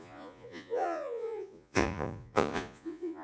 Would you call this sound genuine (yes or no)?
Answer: no